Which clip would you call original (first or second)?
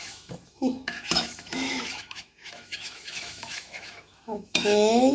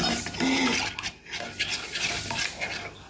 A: second